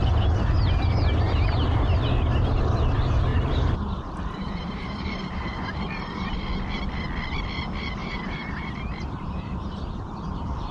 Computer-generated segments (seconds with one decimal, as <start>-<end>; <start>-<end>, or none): 3.3-6.3; 8.0-10.7